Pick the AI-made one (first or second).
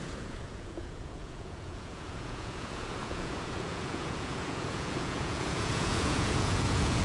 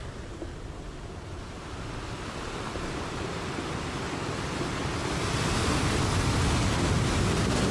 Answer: first